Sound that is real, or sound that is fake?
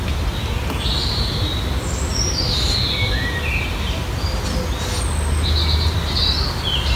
real